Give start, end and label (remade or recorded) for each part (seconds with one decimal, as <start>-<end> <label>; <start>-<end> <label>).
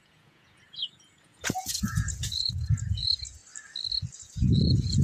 0.0-3.4 remade; 3.4-4.1 recorded; 4.1-5.0 remade